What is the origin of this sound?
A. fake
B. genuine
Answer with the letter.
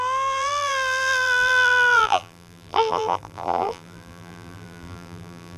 A